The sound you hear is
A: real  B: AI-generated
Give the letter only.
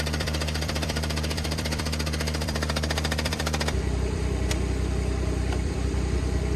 B